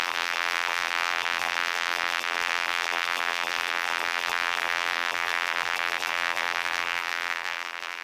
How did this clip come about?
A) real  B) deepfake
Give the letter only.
B